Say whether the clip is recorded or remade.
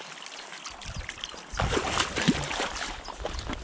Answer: recorded